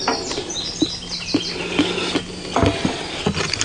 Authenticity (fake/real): real